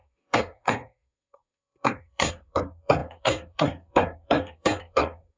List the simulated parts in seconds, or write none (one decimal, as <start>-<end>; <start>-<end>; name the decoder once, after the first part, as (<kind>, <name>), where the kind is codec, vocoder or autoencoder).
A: 0.0-5.4 (codec, SNAC)